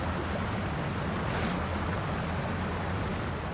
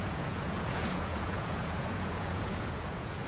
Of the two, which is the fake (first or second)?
second